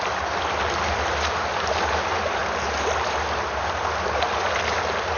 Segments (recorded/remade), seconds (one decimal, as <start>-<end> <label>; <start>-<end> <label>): 0.0-5.2 recorded